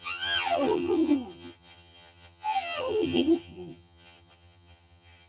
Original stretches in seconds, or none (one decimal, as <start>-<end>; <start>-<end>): none